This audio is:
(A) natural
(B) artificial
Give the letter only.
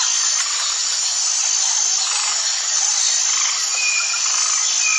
A